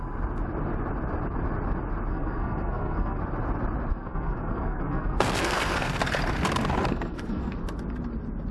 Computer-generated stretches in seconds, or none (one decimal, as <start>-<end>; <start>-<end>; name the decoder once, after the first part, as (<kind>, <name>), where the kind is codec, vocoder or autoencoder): 2.1-3.2 (codec, SNAC); 3.9-6.1; 6.9-7.5